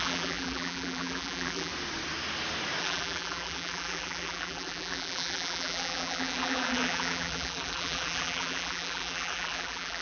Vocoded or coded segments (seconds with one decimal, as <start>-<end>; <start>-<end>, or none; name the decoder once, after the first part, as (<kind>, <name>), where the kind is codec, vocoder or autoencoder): 0.0-1.7 (vocoder, BigVGAN v2); 2.8-10.0